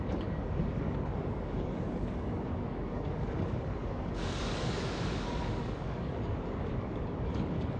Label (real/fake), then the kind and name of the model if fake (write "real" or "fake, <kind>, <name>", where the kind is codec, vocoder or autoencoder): fake, codec, DAC